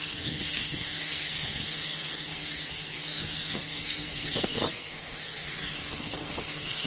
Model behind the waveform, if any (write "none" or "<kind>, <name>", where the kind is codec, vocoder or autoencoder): codec, SNAC